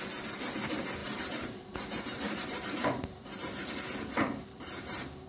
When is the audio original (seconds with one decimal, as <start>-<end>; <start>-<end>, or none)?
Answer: 0.0-1.0; 3.7-4.4